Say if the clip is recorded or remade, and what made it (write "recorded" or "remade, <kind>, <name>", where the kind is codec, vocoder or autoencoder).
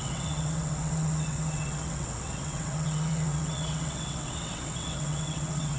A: remade, vocoder, WaveNeXt